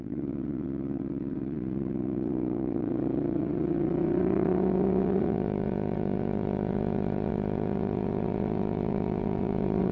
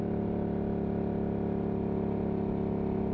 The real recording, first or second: second